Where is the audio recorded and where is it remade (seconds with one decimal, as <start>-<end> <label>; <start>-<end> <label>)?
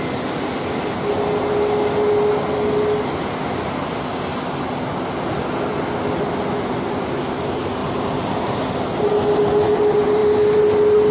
0.0-7.8 recorded; 7.8-8.6 remade; 8.6-11.1 recorded